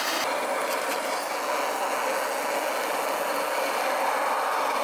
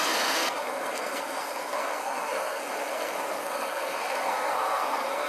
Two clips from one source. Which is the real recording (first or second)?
first